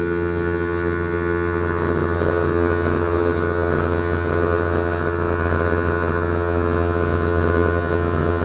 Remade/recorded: remade